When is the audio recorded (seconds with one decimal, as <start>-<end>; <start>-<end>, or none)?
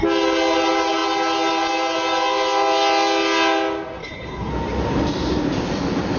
0.0-4.0; 4.5-6.2